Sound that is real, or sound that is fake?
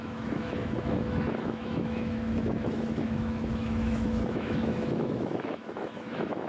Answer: fake